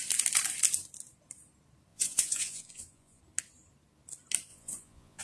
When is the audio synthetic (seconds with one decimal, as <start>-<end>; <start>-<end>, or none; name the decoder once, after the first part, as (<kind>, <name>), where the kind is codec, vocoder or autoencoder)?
1.9-3.2 (vocoder, Vocos); 4.5-5.2